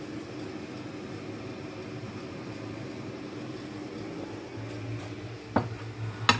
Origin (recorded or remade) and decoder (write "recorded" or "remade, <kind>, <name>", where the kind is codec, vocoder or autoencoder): recorded